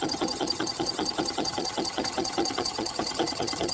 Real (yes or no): no